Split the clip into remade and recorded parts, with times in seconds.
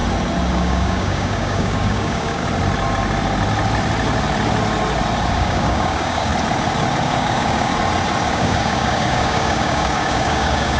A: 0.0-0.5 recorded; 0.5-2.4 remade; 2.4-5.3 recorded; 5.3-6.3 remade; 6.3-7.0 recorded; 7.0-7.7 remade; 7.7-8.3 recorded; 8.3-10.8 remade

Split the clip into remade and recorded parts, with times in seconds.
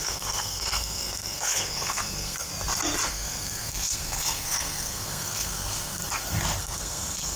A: 0.0-2.5 remade; 2.5-3.1 recorded; 3.1-6.0 remade; 6.0-6.6 recorded; 6.6-7.4 remade